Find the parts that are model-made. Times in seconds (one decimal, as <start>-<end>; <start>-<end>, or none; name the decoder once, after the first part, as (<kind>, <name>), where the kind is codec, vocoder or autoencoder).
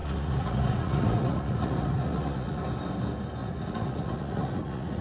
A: 0.0-2.6 (vocoder, Vocos); 3.4-5.0